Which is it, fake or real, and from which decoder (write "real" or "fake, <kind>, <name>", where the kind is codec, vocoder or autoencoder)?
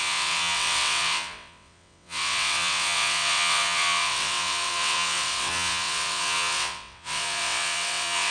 fake, vocoder, WaveNeXt